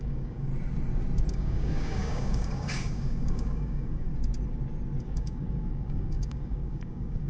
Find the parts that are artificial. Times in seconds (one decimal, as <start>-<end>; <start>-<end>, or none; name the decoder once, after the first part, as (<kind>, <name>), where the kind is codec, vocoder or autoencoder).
0.0-0.5 (codec, DAC); 1.3-4.1; 5.0-7.3